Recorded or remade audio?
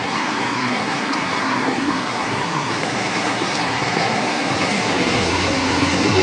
remade